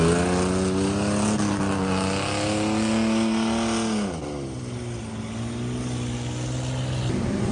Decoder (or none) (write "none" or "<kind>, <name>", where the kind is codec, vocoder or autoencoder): none